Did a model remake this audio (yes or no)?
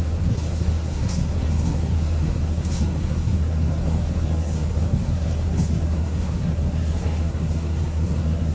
yes